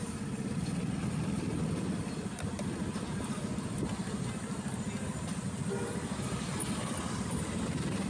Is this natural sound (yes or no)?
yes